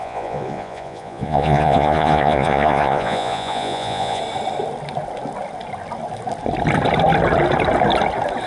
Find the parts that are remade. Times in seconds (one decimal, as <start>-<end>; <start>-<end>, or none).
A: 0.0-4.2